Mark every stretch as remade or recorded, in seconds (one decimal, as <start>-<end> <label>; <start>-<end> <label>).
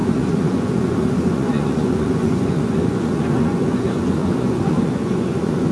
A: 0.0-5.7 remade